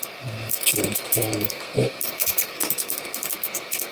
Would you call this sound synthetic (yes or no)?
yes